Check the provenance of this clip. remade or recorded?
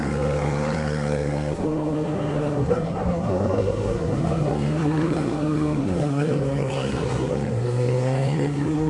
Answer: remade